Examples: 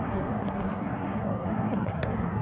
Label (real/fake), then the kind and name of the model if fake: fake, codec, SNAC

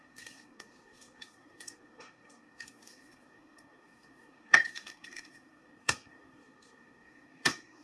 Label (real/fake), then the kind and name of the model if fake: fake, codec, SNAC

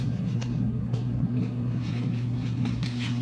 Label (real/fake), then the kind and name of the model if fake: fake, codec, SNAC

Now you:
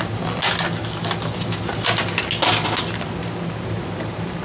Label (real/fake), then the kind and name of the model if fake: real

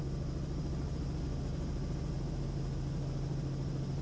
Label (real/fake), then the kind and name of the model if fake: real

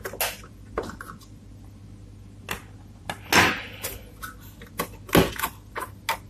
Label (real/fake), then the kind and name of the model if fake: real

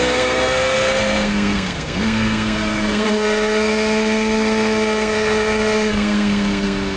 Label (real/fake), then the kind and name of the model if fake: fake, codec, SNAC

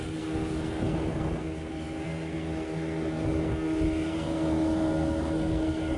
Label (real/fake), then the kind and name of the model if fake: fake, codec, SNAC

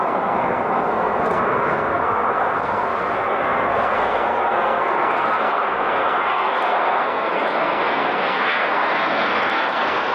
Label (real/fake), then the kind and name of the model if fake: fake, codec, SNAC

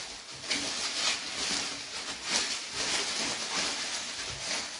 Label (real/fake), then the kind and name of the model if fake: real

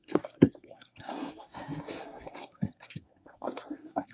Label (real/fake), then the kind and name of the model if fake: fake, codec, SNAC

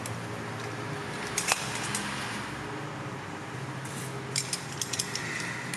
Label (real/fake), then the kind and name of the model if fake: real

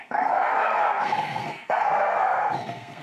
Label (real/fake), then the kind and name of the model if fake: fake, codec, SNAC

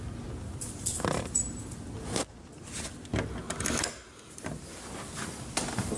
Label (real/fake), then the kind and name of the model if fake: real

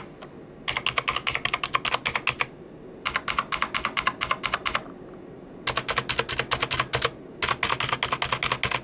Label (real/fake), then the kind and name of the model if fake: real